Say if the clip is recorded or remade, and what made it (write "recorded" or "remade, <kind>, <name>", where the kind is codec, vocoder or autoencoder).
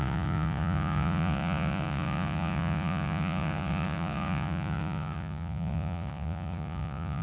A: remade, vocoder, Vocos